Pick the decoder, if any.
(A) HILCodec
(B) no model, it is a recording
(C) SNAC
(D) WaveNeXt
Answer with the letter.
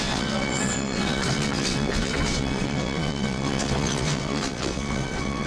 D